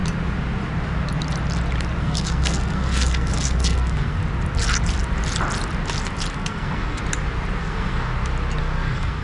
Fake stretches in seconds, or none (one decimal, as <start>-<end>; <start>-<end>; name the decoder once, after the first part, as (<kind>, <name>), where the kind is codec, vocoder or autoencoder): 2.0-4.2 (codec, SNAC); 6.3-7.0; 7.6-8.1; 8.6-9.2